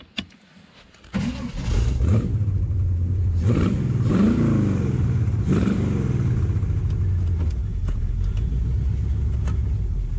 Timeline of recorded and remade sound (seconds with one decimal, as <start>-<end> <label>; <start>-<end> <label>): 0.0-7.7 recorded; 7.7-8.5 remade; 8.5-10.2 recorded